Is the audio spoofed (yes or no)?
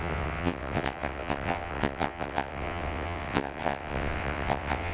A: yes